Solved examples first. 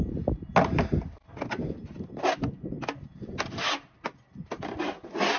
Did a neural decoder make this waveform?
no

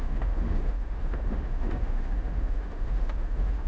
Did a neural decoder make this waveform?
yes